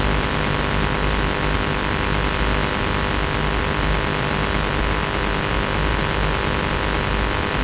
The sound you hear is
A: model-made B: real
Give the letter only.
B